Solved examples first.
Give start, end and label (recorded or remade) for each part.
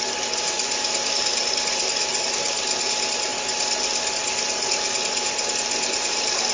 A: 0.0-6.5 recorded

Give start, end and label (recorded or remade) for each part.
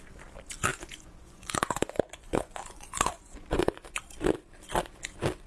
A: 0.0-0.7 recorded; 0.7-4.0 remade; 4.0-5.5 recorded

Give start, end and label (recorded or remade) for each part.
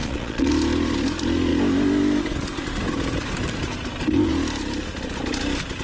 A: 0.0-0.5 remade; 0.5-5.8 recorded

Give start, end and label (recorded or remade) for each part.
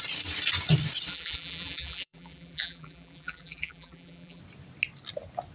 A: 0.0-1.1 recorded; 1.1-4.4 remade; 4.4-5.5 recorded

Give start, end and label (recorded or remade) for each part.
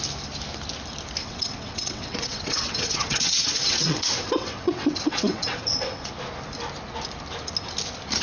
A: 0.0-1.2 recorded; 1.2-6.1 remade; 6.1-8.2 recorded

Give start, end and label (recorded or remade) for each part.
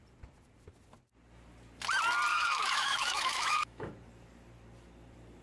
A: 0.0-2.3 recorded; 2.3-3.9 remade; 3.9-5.4 recorded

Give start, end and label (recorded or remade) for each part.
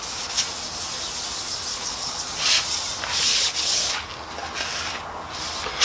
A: 0.0-1.7 recorded; 1.7-2.2 remade; 2.2-3.3 recorded; 3.3-4.1 remade; 4.1-5.8 recorded